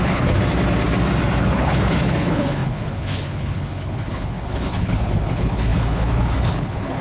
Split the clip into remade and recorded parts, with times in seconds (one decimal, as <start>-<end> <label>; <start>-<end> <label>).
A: 0.0-0.4 remade; 0.4-1.4 recorded; 1.4-7.0 remade